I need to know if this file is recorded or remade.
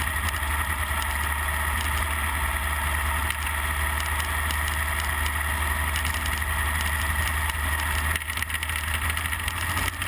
recorded